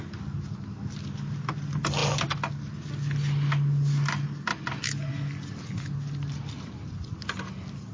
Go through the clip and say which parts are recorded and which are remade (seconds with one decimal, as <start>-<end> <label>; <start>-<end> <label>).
0.0-7.9 recorded